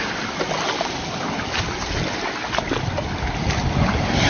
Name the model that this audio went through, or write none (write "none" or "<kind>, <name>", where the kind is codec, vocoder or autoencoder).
none